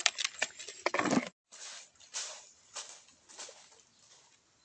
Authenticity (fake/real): real